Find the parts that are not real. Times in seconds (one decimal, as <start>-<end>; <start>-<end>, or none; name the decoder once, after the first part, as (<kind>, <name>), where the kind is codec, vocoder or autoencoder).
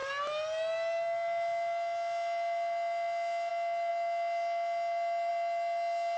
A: none